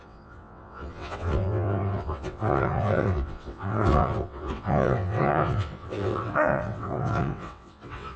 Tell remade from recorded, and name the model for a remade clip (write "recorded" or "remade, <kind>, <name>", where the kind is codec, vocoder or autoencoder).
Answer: remade, vocoder, WaveNeXt